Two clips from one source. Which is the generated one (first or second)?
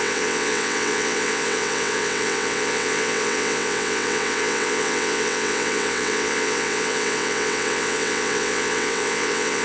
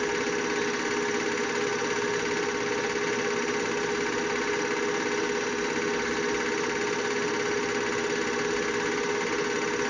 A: first